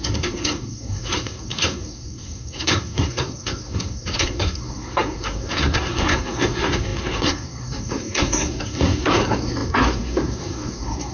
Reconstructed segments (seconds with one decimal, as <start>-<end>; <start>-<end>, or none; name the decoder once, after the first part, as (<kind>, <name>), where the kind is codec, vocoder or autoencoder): 0.0-11.1 (codec, SNAC)